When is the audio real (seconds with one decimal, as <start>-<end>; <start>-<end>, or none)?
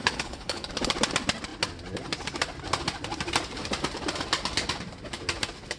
0.7-5.8